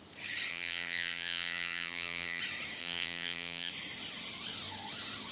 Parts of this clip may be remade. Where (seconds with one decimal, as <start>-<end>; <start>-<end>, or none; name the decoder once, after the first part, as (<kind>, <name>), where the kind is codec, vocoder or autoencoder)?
0.5-2.4 (vocoder, BigVGAN v2); 2.8-3.7